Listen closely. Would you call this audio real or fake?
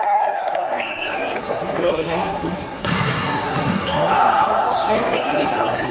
fake